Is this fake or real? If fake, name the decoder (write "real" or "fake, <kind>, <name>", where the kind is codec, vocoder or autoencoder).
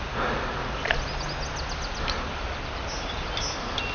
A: real